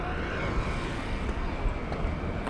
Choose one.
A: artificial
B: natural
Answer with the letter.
B